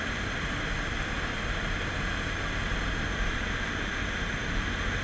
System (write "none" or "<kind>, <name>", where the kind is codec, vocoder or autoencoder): none